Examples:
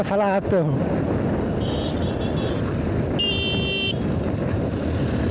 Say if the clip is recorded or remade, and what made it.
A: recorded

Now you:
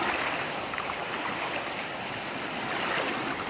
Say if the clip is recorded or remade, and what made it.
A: recorded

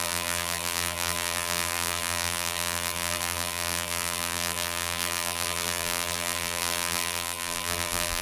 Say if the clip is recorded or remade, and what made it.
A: remade, vocoder, BigVGAN v2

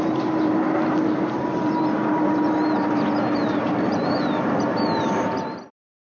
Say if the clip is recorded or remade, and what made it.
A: remade, vocoder, BigVGAN v2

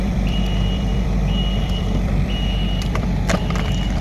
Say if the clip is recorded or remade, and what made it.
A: remade, vocoder, BigVGAN v2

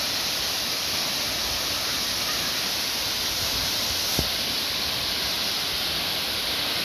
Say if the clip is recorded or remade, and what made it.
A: recorded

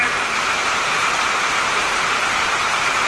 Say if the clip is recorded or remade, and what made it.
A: remade, vocoder, BigVGAN v2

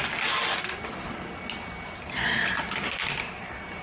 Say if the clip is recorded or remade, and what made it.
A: recorded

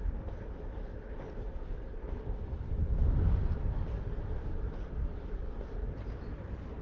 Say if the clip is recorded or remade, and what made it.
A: recorded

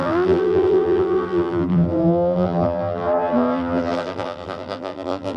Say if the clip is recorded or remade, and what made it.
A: remade, vocoder, BigVGAN v2